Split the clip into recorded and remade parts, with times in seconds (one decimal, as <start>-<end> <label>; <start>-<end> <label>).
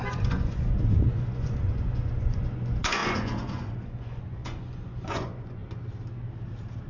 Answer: 0.0-5.6 remade; 5.6-6.9 recorded